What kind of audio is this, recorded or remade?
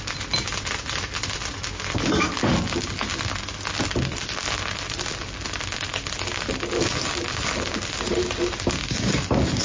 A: recorded